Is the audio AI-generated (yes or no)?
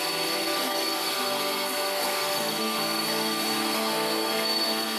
yes